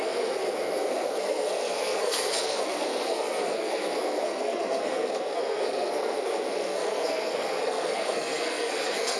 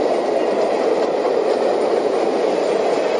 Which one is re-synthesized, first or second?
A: first